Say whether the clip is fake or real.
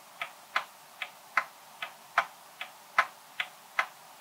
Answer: real